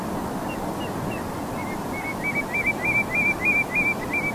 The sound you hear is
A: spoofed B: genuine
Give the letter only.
B